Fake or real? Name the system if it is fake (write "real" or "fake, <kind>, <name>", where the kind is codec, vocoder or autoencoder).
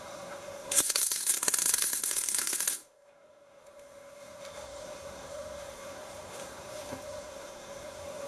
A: fake, codec, SNAC